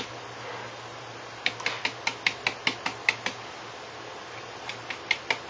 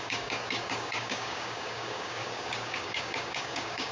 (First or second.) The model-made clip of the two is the second